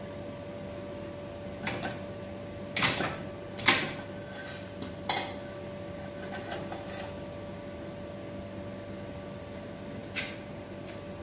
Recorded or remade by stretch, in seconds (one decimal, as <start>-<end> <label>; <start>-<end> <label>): 0.0-11.2 recorded